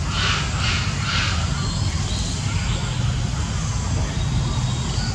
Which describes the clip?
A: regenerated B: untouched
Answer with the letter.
B